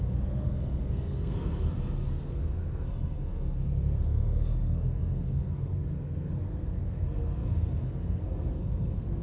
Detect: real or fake fake